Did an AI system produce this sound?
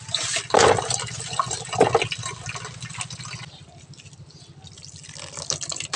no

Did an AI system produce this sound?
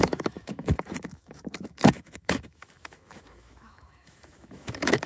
yes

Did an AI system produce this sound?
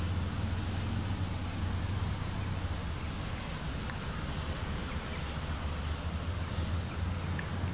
no